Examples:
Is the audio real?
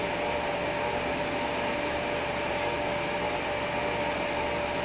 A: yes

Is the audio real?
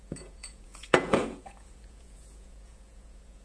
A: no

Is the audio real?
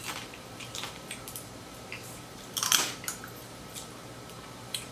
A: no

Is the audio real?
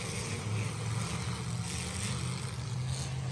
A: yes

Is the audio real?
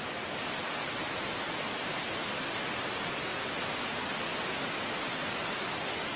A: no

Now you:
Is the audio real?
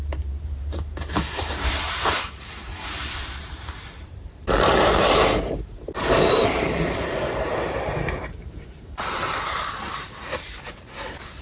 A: no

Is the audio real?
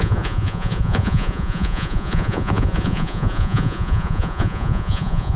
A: no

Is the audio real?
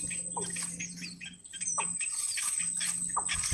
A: yes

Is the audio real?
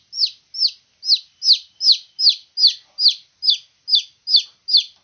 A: yes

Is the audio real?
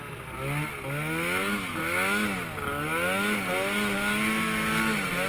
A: yes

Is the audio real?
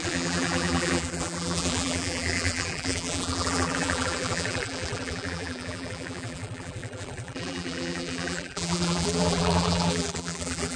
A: no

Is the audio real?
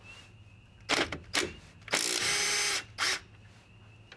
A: yes